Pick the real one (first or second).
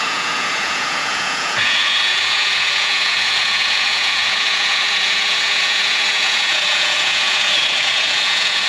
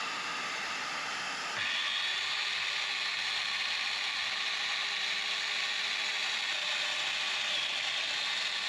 second